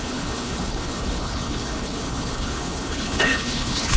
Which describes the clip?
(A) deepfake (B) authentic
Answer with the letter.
A